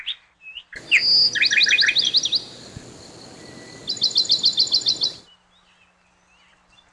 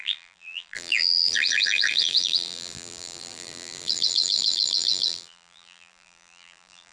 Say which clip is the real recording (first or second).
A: first